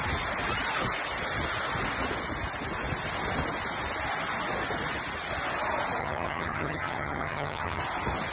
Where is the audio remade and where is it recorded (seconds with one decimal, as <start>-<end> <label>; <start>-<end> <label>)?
0.0-6.0 recorded; 6.0-7.8 remade; 7.8-8.3 recorded